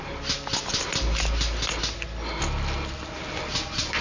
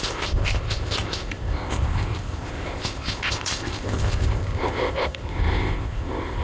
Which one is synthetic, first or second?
second